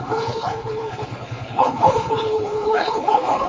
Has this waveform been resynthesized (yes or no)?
yes